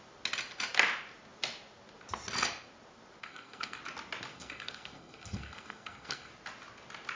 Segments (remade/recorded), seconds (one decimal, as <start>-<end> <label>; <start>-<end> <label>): 0.0-3.2 recorded; 3.2-3.8 remade; 3.8-4.3 recorded; 4.3-6.3 remade; 6.3-7.2 recorded